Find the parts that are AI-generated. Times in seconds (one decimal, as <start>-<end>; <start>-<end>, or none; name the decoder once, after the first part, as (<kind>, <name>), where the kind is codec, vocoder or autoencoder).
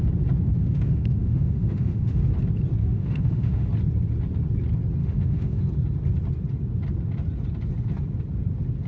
0.5-2.2 (autoencoder, DAC-VAE); 2.8-3.7; 5.0-5.6